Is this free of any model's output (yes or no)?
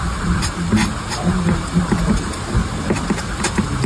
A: yes